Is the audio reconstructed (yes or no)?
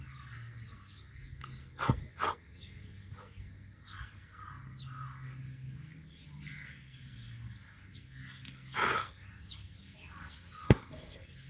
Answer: yes